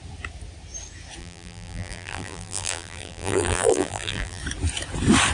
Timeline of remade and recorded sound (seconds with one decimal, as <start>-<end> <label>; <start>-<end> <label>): 0.0-1.2 recorded; 1.2-4.4 remade; 4.4-5.3 recorded